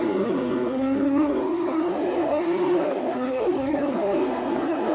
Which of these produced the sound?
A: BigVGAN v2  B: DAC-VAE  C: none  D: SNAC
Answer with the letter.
D